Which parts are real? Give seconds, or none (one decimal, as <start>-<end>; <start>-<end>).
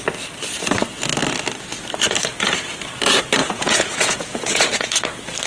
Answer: 0.0-3.4; 4.9-5.5